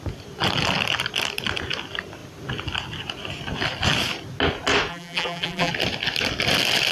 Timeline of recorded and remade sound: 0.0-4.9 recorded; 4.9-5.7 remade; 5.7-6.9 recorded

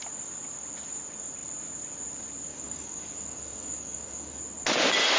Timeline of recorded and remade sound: 0.0-2.5 recorded; 2.5-4.4 remade; 4.4-5.2 recorded

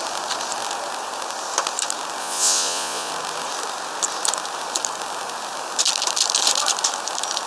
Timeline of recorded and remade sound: 0.0-2.2 recorded; 2.2-3.1 remade; 3.1-7.5 recorded